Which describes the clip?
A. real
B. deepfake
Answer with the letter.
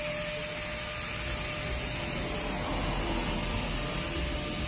A